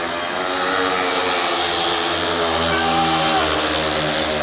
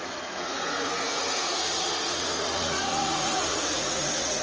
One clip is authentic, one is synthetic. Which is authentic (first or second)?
first